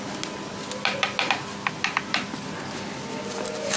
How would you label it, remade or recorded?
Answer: recorded